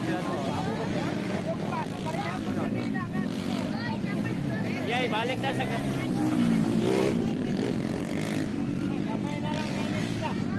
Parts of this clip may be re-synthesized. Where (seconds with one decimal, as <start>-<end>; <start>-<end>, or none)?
none